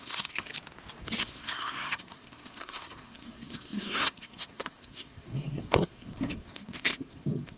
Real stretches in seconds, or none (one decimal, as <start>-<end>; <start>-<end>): 0.5-1.2